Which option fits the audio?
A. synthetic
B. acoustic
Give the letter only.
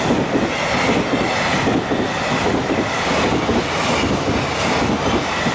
B